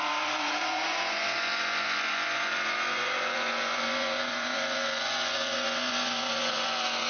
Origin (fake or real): fake